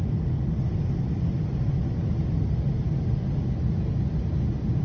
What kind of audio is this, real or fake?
real